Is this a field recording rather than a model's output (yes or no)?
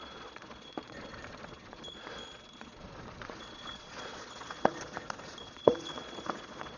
no